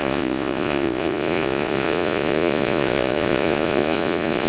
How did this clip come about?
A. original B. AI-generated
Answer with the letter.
B